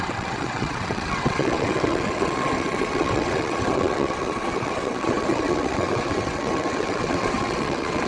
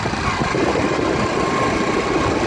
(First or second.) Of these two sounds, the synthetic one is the first